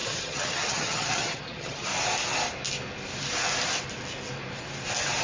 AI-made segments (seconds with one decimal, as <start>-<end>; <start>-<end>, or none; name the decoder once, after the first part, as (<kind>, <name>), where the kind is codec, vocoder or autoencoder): 0.0-1.9 (vocoder, HiFi-GAN)